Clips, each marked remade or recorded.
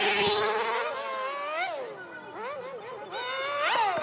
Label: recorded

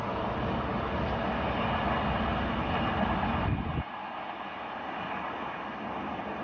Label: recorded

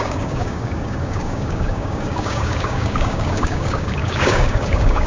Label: remade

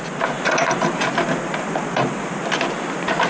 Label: recorded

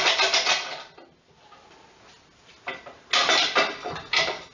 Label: recorded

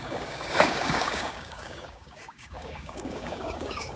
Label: remade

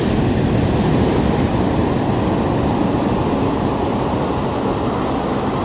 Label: recorded